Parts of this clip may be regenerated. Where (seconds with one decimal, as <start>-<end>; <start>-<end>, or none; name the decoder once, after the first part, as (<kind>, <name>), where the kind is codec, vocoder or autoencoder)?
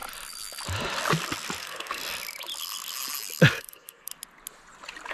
1.6-2.0 (codec, SNAC); 3.5-4.1